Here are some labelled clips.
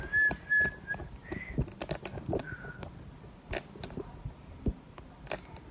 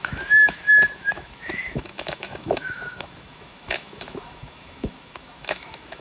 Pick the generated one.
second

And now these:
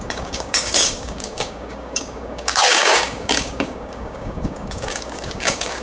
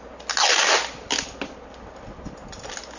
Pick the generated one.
first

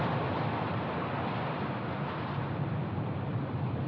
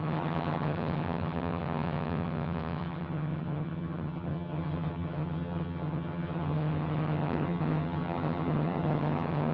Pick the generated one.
second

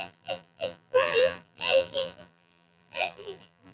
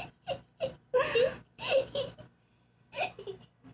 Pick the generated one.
first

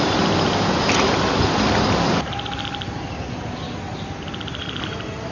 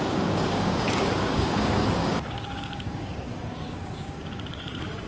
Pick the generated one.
second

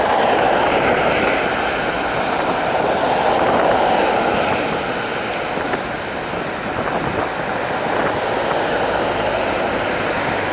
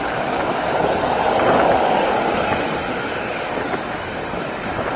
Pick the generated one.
second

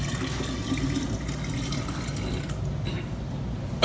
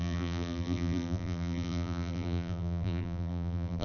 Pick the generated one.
second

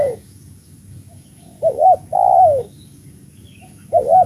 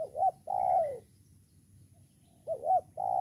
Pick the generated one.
first